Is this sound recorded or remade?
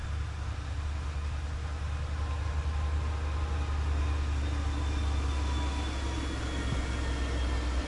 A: recorded